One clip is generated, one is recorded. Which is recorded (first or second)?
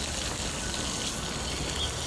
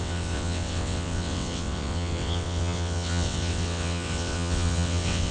first